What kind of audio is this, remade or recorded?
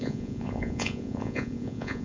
remade